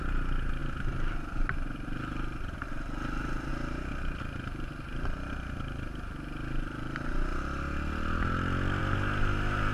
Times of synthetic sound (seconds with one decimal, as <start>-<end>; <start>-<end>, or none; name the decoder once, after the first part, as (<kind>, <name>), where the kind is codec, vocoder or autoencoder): none